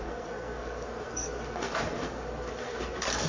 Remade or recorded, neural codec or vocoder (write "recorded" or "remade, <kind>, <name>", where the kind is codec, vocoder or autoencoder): remade, codec, SNAC